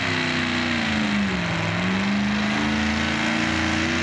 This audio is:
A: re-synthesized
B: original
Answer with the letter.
B